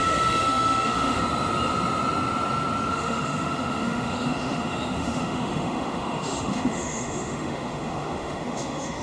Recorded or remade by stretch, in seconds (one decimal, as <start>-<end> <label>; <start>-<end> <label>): 0.0-1.2 remade; 1.2-2.9 recorded; 2.9-9.0 remade